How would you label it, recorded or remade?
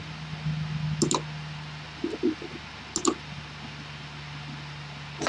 recorded